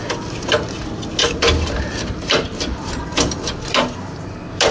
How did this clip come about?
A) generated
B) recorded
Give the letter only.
B